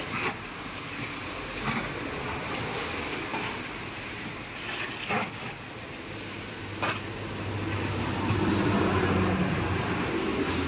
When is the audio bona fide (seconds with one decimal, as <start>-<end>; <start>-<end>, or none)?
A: 0.0-3.3; 4.3-10.7